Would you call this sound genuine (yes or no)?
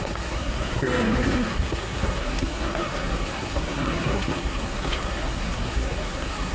no